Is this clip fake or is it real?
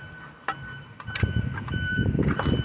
fake